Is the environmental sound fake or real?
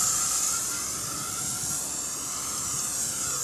real